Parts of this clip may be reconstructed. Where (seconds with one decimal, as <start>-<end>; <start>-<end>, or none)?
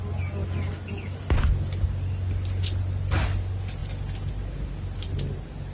none